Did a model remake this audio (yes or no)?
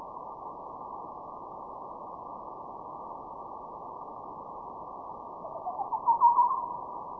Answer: no